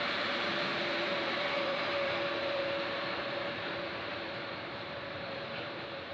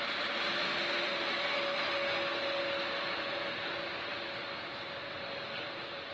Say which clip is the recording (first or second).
second